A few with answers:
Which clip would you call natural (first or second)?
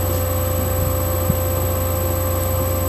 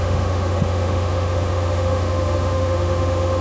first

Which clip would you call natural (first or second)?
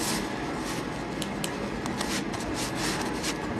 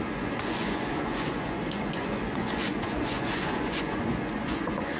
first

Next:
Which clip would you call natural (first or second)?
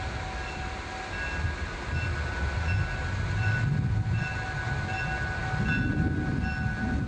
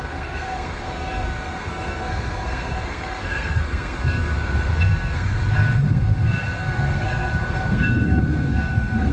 first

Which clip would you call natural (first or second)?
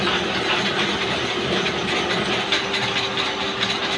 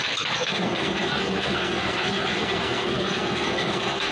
first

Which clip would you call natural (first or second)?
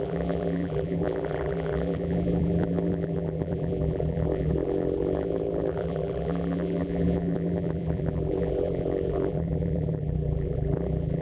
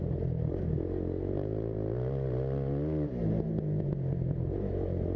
second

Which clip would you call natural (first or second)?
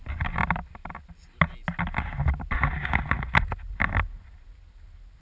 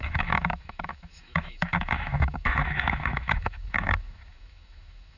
first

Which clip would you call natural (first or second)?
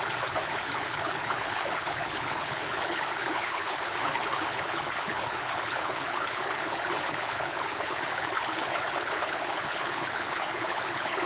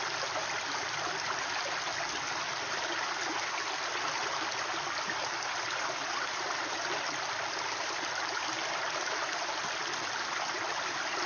second